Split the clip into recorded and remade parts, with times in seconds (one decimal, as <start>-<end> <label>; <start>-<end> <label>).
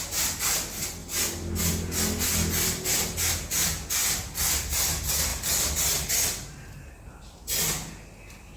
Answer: 0.0-8.6 recorded